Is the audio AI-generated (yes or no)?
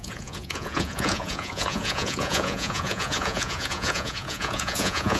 yes